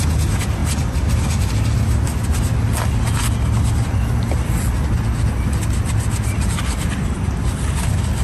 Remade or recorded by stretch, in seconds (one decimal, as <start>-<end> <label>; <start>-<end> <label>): 0.0-8.2 recorded